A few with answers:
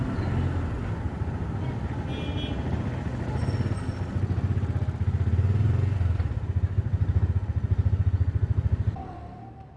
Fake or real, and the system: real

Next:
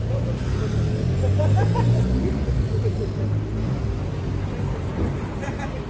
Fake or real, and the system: real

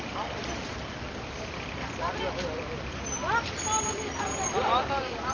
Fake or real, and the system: real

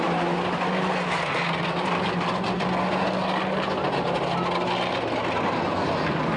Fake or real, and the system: real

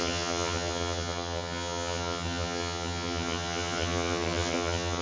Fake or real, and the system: fake, vocoder, HiFi-GAN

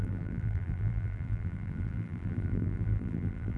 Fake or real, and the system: fake, vocoder, BigVGAN v2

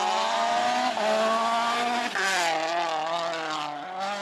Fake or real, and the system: real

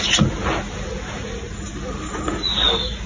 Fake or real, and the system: real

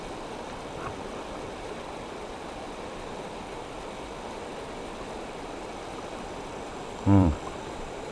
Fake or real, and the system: fake, vocoder, BigVGAN v2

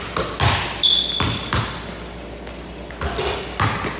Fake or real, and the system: real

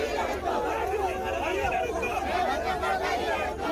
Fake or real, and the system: real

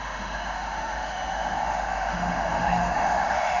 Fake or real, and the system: fake, autoencoder, DAC-VAE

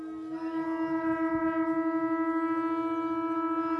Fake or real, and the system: real